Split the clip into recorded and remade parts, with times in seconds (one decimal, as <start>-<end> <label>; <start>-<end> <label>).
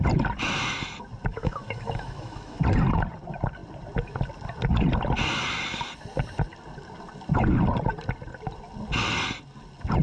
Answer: 0.0-1.3 recorded; 1.3-2.6 remade; 2.6-10.0 recorded